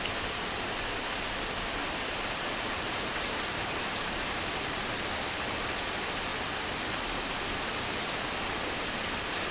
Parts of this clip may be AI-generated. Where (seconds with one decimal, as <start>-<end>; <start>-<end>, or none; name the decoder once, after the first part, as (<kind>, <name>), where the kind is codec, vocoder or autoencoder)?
1.8-4.8 (vocoder, BigVGAN v2)